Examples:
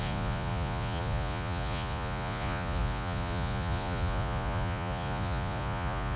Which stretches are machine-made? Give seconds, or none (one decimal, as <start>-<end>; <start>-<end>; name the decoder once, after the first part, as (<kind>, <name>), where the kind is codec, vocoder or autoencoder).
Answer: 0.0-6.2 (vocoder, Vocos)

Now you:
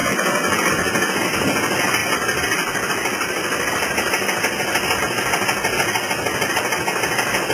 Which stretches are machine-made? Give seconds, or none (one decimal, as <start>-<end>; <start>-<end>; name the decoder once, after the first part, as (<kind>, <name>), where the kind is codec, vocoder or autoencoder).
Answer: none

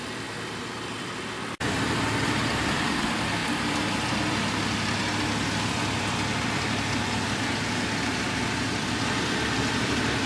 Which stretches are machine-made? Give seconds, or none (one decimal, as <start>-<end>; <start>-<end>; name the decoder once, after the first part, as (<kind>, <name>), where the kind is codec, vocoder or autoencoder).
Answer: 0.0-3.4 (vocoder, BigVGAN v2); 5.7-10.3

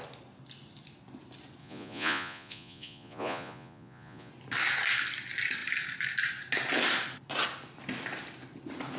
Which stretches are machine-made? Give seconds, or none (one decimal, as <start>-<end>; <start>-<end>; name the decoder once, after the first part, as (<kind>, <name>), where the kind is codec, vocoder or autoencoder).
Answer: 1.6-4.3 (vocoder, Vocos)

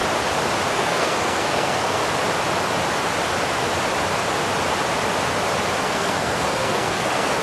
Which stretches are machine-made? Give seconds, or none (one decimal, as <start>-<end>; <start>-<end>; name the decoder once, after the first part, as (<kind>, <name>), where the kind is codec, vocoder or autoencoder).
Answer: 0.7-2.0 (codec, SNAC); 5.8-7.4

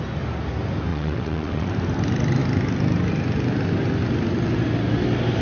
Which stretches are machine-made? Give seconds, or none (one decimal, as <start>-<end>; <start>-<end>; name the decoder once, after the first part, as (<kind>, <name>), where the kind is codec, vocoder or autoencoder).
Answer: 0.9-1.7 (vocoder, WaveNeXt)

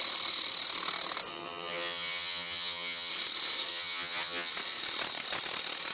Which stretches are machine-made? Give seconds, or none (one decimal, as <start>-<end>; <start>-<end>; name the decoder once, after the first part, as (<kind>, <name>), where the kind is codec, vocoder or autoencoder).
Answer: 1.3-3.1 (vocoder, HiFi-GAN); 3.7-4.5

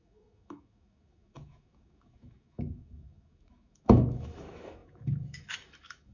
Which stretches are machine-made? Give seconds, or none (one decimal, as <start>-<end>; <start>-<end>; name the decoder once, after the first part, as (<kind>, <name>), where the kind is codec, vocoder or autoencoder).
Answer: 0.0-6.1 (autoencoder, DAC-VAE)